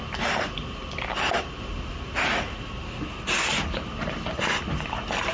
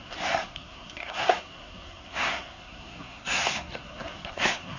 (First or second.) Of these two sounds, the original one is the first